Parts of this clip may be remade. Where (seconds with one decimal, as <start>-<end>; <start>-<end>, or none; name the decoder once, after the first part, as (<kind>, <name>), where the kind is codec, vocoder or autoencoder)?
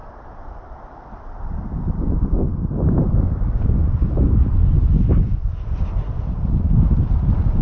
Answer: none